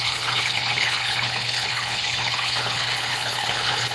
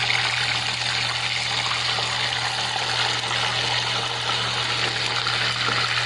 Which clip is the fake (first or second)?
first